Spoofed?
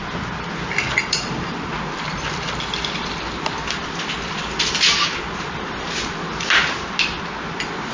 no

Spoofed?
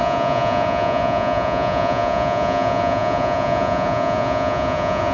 yes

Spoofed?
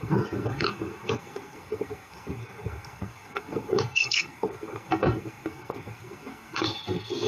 yes